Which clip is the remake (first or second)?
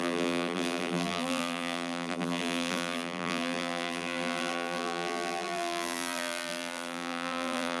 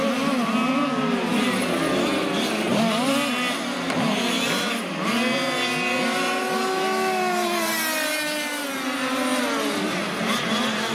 first